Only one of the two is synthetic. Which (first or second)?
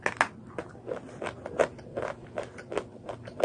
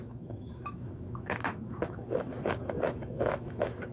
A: second